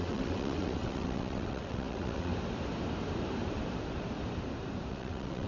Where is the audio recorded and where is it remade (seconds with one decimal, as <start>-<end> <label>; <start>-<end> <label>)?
0.0-2.3 remade; 2.3-4.9 recorded; 4.9-5.5 remade